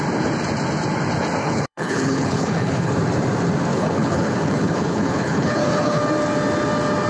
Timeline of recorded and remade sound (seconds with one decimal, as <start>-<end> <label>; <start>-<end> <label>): 0.0-1.4 recorded; 1.4-2.9 remade; 2.9-3.7 recorded; 3.7-6.0 remade; 6.0-7.1 recorded